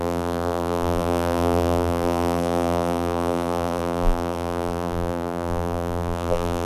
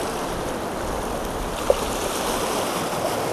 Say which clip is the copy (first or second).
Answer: first